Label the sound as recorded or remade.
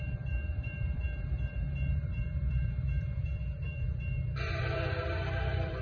remade